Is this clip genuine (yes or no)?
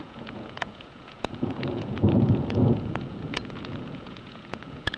no